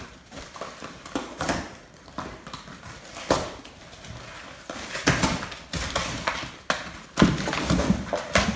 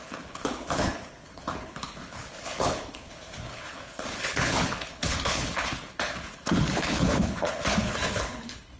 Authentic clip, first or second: first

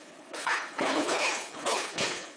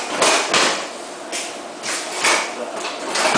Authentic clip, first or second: second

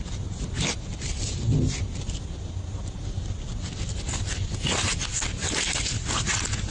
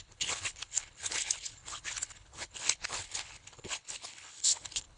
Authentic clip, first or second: first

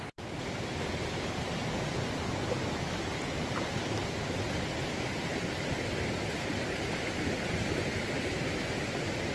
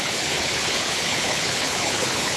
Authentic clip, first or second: first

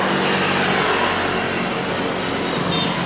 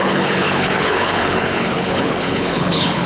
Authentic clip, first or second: first